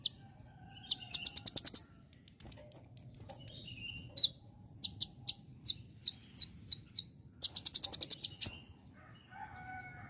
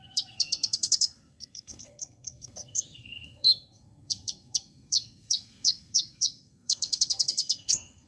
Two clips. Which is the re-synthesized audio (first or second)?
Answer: second